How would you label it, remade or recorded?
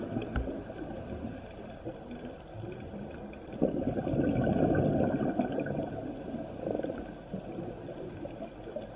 recorded